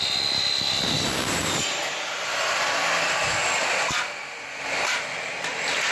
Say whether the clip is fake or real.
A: fake